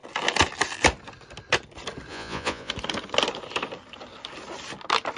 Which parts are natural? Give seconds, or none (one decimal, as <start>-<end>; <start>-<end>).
0.0-2.1; 2.7-5.2